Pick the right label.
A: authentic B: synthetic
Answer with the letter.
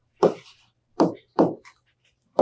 B